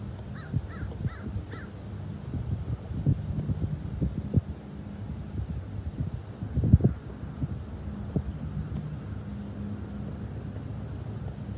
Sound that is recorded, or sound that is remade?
recorded